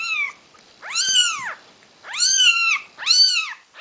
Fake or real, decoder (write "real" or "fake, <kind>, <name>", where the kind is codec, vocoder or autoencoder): fake, vocoder, BigVGAN v2